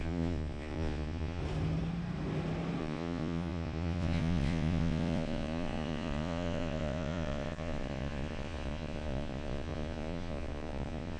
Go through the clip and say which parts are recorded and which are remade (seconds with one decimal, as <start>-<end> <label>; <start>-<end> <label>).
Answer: 0.0-1.4 remade; 1.4-2.8 recorded; 2.8-11.2 remade